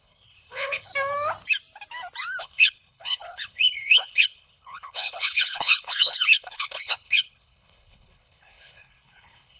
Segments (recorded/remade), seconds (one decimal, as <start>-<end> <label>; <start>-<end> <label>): 0.0-0.9 remade; 0.9-2.4 recorded; 2.4-9.6 remade